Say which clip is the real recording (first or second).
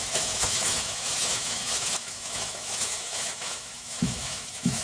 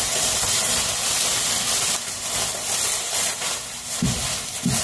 second